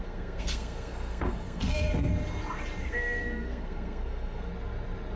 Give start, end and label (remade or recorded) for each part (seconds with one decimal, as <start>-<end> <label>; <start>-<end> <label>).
0.0-2.1 remade; 2.1-2.8 recorded; 2.8-4.5 remade; 4.5-5.2 recorded